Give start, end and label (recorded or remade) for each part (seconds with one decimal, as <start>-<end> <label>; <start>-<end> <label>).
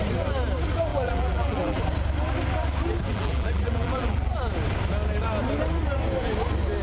0.0-0.9 recorded; 0.9-1.8 remade; 1.8-3.1 recorded; 3.1-4.4 remade; 4.4-6.8 recorded